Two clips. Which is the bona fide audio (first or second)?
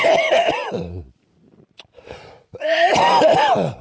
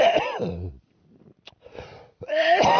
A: second